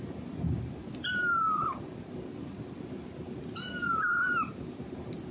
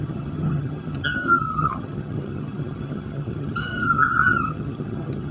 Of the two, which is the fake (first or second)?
second